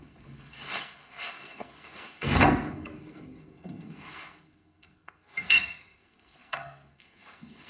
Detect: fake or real fake